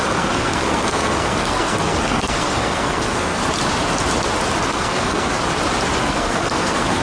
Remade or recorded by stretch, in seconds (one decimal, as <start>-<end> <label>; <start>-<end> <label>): 0.0-3.4 remade; 3.4-4.7 recorded; 4.7-5.3 remade; 5.3-6.0 recorded; 6.0-7.0 remade